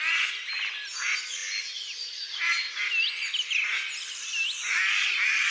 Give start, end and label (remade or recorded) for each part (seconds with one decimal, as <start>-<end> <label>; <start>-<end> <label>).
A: 0.0-5.5 recorded